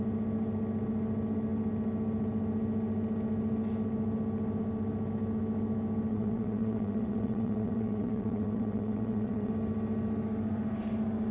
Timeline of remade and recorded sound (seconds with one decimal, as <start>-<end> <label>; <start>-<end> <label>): 0.0-6.1 recorded; 6.1-9.5 remade; 9.5-11.3 recorded